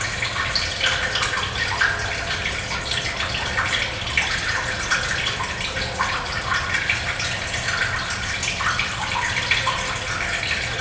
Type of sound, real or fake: real